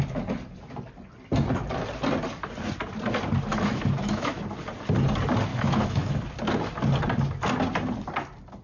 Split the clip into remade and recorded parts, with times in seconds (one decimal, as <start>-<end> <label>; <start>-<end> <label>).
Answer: 0.0-3.5 recorded; 3.5-4.4 remade; 4.4-5.5 recorded; 5.5-6.2 remade; 6.2-8.6 recorded